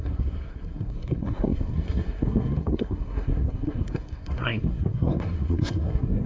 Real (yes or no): no